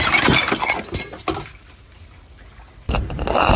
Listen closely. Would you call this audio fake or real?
real